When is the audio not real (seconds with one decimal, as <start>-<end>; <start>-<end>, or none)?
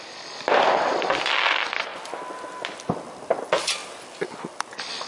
none